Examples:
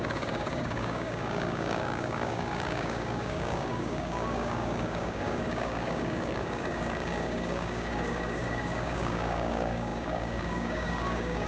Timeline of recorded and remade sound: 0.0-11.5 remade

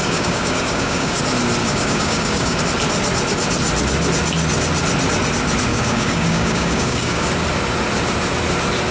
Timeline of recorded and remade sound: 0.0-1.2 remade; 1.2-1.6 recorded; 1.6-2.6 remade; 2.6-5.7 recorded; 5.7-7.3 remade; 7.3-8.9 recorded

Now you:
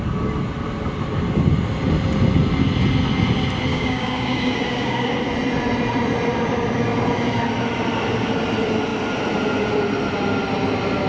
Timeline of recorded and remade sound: 0.0-3.7 recorded; 3.7-5.2 remade; 5.2-11.1 recorded

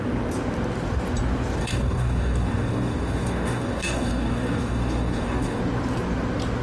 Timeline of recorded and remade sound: 0.0-1.6 recorded; 1.6-5.6 remade; 5.6-6.6 recorded

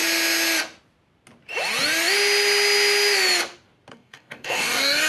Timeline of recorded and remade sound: 0.0-3.9 recorded; 3.9-5.1 remade

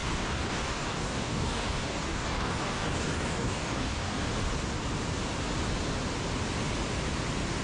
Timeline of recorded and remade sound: 0.0-4.3 remade; 4.3-7.6 recorded

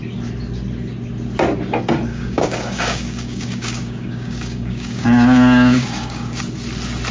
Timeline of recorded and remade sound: 0.0-2.1 recorded; 2.1-6.4 remade; 6.4-7.1 recorded

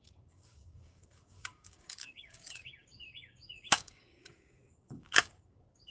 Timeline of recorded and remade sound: 0.0-5.9 remade